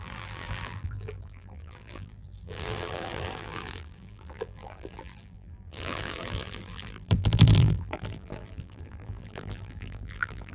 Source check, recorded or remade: remade